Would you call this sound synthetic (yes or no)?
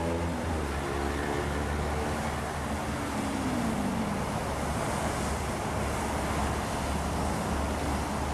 no